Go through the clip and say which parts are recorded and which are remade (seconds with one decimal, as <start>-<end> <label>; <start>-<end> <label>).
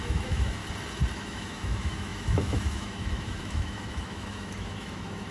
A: 0.0-0.6 remade; 0.6-1.1 recorded; 1.1-5.3 remade